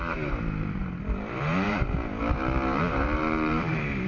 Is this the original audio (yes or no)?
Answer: no